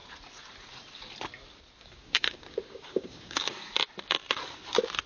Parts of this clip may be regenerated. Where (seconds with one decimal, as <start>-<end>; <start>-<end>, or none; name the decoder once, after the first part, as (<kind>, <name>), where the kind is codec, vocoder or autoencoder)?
1.8-3.7 (codec, DAC)